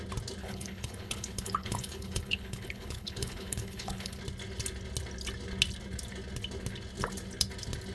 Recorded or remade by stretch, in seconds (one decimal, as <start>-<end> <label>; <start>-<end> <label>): 0.0-0.4 recorded; 0.4-4.2 remade; 4.2-7.9 recorded